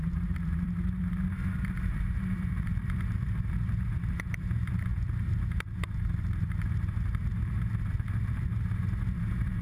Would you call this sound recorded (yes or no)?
no